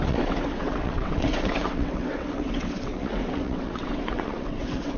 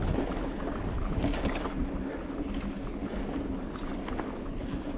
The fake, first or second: first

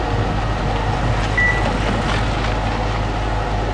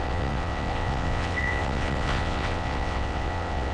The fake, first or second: second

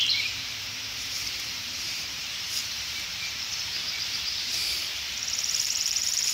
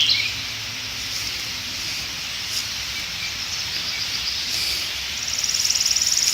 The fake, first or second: first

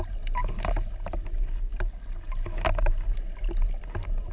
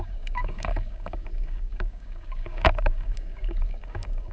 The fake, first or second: second